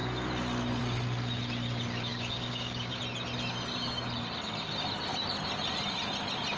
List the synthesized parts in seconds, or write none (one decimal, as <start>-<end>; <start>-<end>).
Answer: 2.1-3.0